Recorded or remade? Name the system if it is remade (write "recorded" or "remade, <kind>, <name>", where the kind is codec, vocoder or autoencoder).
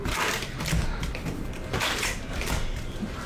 remade, vocoder, BigVGAN v2